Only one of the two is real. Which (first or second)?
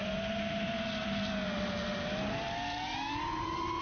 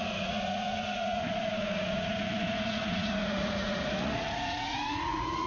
first